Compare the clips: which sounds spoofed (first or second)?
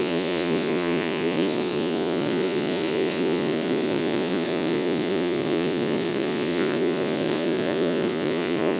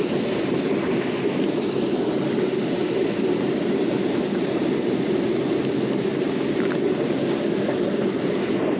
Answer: first